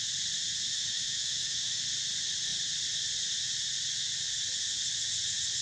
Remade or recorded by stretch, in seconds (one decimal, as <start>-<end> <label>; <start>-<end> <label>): 0.0-0.7 recorded; 0.7-1.8 remade; 1.8-5.6 recorded